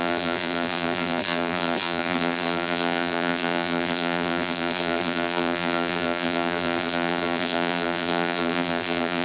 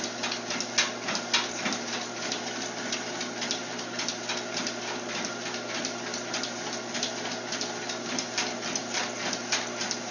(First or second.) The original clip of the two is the second